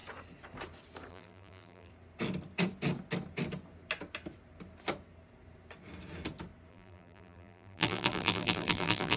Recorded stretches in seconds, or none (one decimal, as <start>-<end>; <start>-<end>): 0.0-1.1; 1.9-6.7